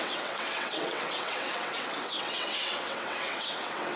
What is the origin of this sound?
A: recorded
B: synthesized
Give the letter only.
B